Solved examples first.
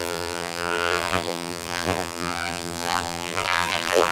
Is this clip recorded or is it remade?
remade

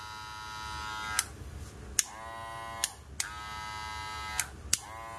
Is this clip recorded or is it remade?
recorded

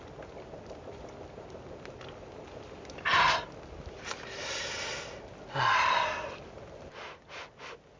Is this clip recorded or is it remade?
recorded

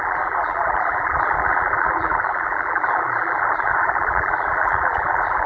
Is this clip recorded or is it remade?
remade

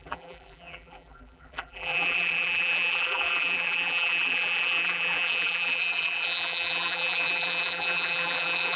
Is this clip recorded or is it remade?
remade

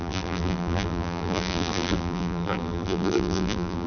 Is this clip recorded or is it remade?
remade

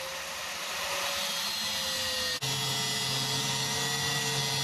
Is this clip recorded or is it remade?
recorded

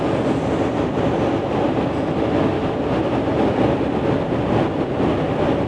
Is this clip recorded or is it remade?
recorded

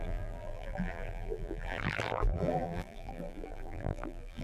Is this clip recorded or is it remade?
remade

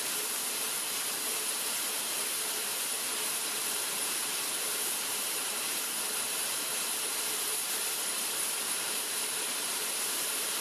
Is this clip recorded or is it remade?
remade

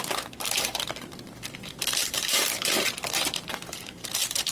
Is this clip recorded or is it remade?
remade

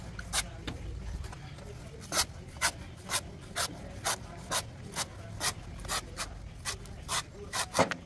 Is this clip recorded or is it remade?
recorded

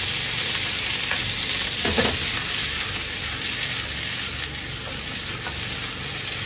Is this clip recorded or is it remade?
recorded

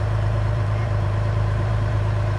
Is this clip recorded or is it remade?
remade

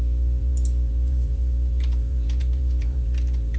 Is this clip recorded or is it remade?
remade